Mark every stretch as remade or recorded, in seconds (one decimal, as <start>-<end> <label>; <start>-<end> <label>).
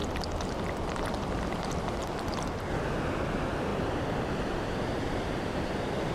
0.0-0.7 recorded; 0.7-3.7 remade; 3.7-4.3 recorded; 4.3-6.1 remade